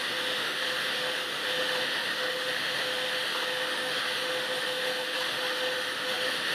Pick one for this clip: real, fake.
fake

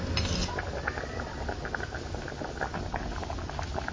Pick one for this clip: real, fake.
real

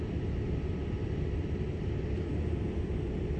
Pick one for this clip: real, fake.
real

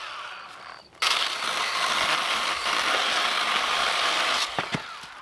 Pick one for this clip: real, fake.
real